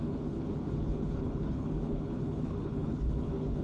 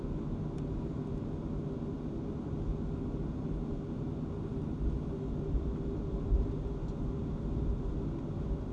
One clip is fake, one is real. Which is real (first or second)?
second